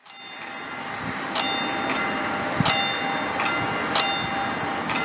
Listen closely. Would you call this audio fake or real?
real